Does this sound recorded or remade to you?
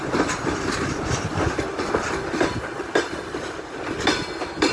recorded